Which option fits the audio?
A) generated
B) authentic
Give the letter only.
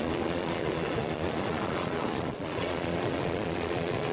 A